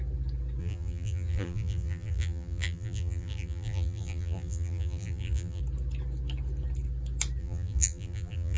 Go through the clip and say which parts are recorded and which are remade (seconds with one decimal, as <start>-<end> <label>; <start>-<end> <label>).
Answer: 0.0-0.6 recorded; 0.6-5.6 remade; 5.6-7.4 recorded; 7.4-8.6 remade